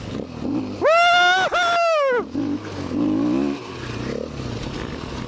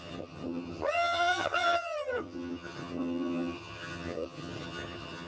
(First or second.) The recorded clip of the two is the first